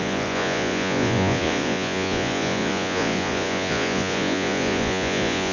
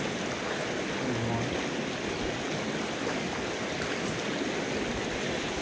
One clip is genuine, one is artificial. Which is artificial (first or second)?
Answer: first